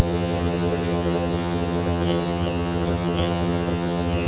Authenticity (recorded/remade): remade